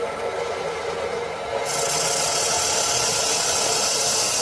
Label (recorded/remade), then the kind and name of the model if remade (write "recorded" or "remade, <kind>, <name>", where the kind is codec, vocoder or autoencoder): recorded